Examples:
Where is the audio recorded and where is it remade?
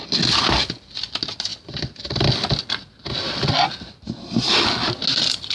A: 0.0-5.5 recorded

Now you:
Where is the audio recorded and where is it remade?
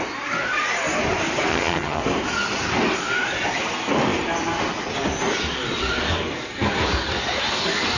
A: 0.0-1.5 recorded; 1.5-2.0 remade; 2.0-8.0 recorded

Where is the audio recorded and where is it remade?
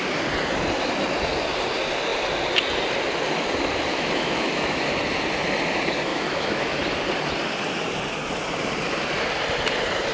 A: 0.0-3.9 recorded; 3.9-4.9 remade; 4.9-6.1 recorded; 6.1-6.8 remade; 6.8-10.1 recorded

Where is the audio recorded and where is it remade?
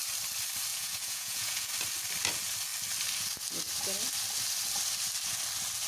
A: 0.0-0.7 recorded; 0.7-1.7 remade; 1.7-5.9 recorded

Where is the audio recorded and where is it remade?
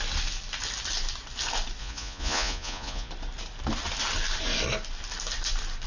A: 0.0-1.8 recorded; 1.8-3.1 remade; 3.1-5.9 recorded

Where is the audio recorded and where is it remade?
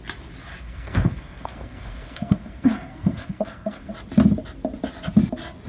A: 0.0-0.5 recorded; 0.5-3.9 remade; 3.9-5.7 recorded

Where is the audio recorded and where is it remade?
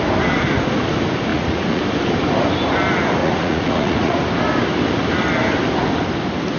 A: 0.0-1.3 recorded; 1.3-1.8 remade; 1.8-3.2 recorded; 3.2-4.2 remade; 4.2-6.6 recorded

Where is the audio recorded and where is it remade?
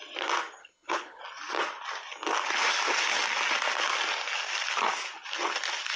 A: 0.0-0.6 recorded; 0.6-1.2 remade; 1.2-6.0 recorded